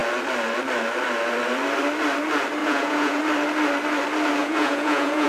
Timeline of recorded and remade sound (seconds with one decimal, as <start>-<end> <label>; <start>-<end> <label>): 0.0-2.6 recorded; 2.6-3.2 remade; 3.2-4.4 recorded; 4.4-5.3 remade